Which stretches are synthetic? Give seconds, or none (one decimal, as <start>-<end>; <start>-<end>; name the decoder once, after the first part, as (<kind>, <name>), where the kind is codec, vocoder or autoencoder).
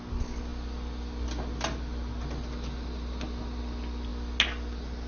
none